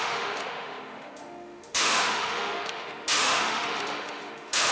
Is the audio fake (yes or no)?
yes